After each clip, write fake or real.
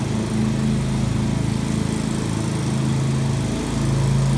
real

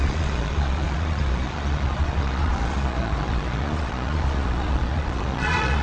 fake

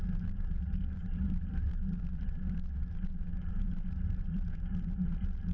fake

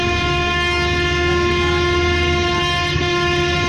real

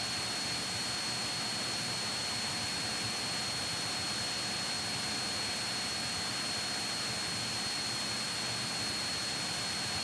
real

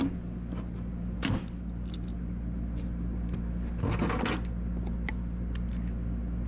real